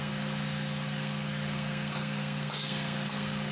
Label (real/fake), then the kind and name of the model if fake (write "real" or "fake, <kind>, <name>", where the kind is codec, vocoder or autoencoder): fake, codec, SNAC